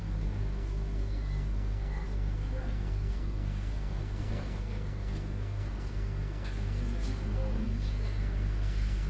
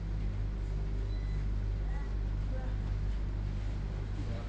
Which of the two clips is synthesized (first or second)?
first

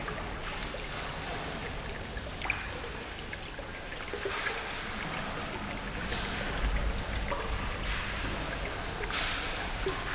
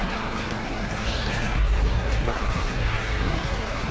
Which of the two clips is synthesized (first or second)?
second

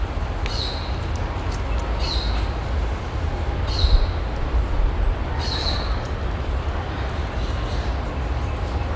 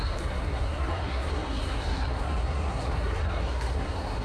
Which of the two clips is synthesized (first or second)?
second